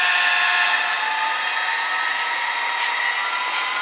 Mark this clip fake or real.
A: real